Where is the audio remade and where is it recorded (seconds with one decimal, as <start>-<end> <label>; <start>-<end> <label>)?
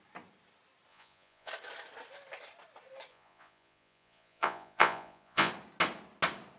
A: 0.0-0.9 recorded; 0.9-1.5 remade; 1.5-3.1 recorded; 3.1-5.5 remade; 5.5-6.6 recorded